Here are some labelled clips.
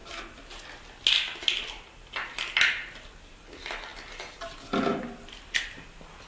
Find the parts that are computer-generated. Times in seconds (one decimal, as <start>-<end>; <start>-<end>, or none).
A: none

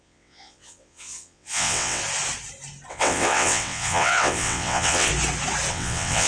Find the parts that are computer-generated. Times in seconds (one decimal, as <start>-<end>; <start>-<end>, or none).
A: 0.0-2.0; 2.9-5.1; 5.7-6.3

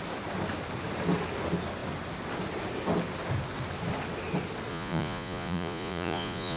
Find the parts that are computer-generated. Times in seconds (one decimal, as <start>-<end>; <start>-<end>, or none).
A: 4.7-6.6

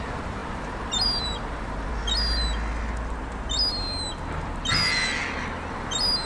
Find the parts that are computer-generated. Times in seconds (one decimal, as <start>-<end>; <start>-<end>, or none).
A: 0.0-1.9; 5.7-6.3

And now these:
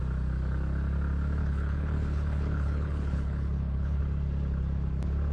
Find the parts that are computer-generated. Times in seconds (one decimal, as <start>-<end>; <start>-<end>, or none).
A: 1.4-4.0

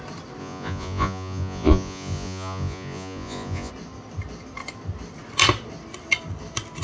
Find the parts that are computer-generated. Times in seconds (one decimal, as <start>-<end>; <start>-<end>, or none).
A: 0.4-3.7

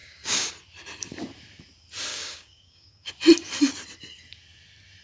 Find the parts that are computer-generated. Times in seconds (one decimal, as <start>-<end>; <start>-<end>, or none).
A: 0.0-0.5; 2.1-3.1

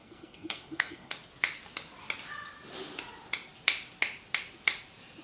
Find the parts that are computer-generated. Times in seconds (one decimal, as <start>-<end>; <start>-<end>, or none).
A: 0.0-1.1